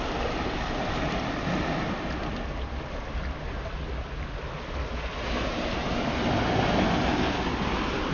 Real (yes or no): yes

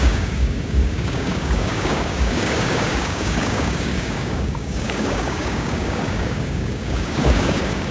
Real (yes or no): no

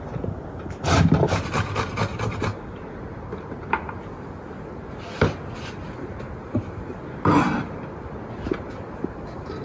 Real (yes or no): yes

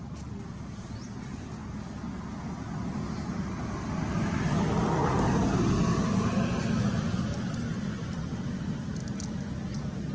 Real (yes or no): yes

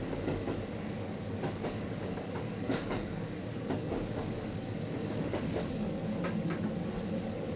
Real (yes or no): no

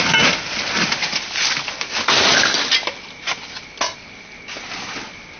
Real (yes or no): yes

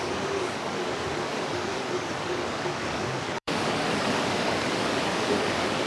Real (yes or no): no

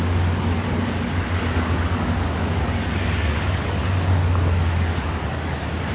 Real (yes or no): no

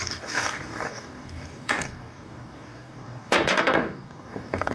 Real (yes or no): no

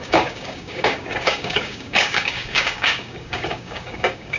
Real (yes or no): no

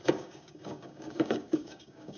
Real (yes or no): no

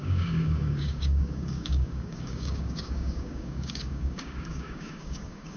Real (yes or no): no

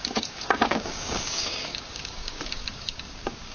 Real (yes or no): no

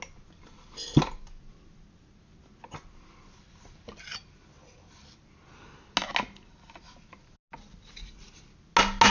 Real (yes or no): yes